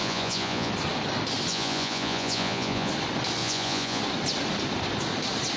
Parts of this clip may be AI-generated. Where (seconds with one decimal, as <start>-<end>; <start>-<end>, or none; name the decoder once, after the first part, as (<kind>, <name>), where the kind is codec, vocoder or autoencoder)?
0.0-0.7 (vocoder, Vocos); 1.5-2.9; 3.4-4.0